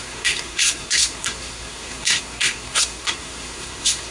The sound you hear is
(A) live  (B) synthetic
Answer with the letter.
B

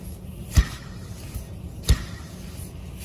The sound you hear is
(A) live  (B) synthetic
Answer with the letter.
A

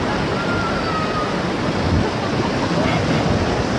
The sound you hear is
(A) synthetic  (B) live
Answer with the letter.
B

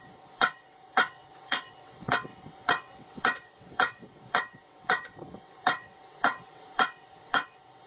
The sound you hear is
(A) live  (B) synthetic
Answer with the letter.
B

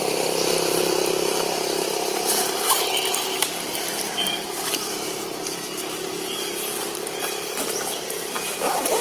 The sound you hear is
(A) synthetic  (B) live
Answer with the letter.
B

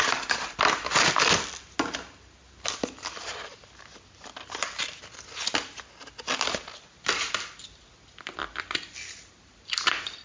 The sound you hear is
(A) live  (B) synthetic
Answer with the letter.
A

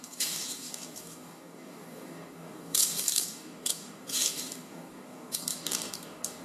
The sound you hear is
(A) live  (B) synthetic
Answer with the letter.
B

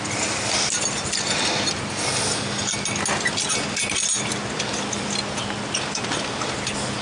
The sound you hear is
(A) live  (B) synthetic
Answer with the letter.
A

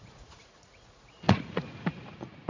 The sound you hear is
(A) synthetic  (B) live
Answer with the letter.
A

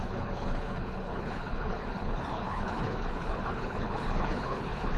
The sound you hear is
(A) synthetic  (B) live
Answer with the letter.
A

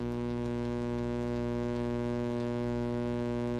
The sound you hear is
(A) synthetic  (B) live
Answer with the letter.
A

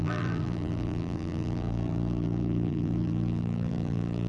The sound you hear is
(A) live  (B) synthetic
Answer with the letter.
B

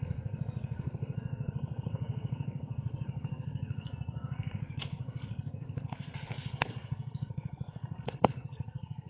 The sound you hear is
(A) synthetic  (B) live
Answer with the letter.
A